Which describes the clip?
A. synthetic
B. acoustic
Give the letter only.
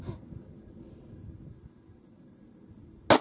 B